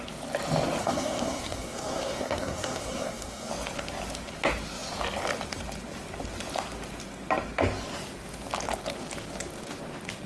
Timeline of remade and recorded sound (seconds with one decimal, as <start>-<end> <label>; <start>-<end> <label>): 0.0-0.8 recorded; 0.8-3.5 remade; 3.5-10.3 recorded